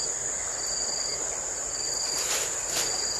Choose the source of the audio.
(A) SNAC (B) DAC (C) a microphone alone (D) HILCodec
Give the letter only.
C